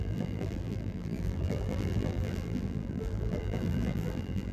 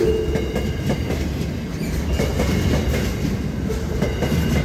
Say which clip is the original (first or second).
second